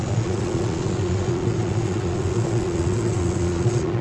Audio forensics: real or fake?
fake